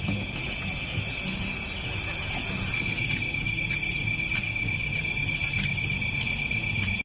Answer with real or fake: fake